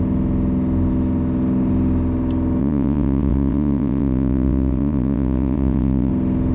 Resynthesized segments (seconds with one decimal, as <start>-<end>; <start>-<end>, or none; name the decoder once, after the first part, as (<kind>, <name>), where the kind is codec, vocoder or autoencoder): 2.6-6.1 (vocoder, WaveNeXt)